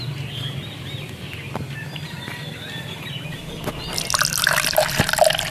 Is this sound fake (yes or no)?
no